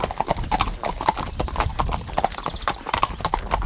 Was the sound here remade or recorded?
recorded